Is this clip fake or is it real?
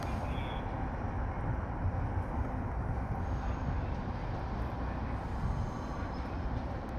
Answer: real